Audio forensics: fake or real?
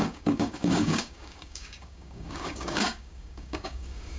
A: fake